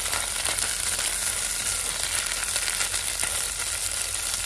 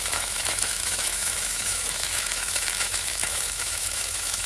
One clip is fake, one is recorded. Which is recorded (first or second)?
first